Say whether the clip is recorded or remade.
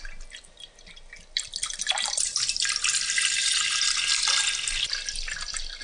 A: recorded